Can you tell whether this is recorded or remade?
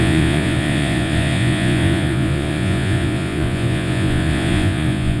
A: remade